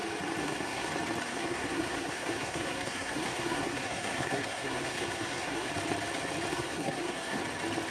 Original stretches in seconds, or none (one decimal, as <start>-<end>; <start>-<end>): 0.0-0.4; 0.9-1.3; 5.7-6.5; 7.4-7.9